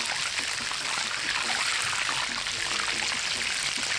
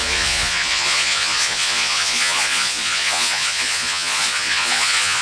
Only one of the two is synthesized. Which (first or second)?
second